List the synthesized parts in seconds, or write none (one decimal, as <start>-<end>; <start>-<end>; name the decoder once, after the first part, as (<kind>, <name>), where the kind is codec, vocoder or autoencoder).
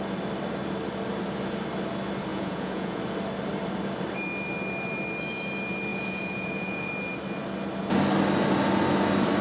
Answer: 2.3-3.0 (vocoder, Vocos); 5.9-6.9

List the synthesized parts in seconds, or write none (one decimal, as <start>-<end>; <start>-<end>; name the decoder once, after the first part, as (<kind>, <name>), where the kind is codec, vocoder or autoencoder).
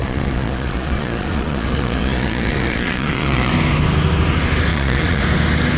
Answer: 0.0-3.5 (vocoder, Vocos); 4.7-5.2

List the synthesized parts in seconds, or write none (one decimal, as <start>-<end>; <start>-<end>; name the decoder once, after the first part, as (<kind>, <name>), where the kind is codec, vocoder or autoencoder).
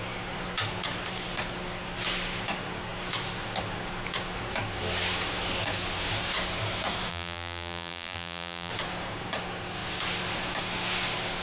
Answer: 7.1-8.7 (vocoder, BigVGAN v2)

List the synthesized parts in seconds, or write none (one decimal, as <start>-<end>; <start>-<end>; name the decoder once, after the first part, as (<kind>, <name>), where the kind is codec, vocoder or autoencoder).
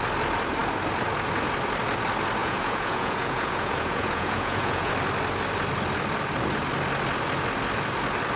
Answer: 2.4-4.9 (vocoder, Vocos)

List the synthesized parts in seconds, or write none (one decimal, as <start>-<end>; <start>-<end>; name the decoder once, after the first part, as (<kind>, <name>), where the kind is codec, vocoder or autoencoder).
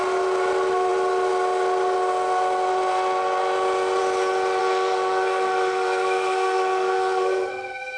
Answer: 4.6-8.0 (codec, SNAC)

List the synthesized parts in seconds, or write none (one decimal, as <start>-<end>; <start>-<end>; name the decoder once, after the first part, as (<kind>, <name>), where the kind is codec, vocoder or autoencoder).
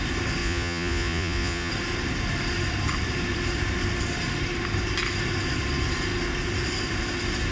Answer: 0.4-1.7 (vocoder, Vocos)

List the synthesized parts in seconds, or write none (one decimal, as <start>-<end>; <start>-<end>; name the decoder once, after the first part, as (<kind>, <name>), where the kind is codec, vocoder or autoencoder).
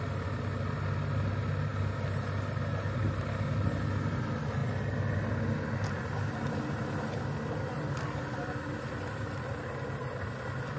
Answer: none